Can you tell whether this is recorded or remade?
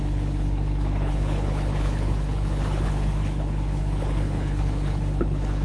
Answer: remade